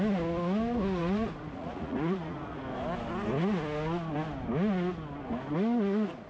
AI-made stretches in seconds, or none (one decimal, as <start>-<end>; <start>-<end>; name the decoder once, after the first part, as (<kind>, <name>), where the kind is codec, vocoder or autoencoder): 1.0-2.6 (vocoder, Vocos)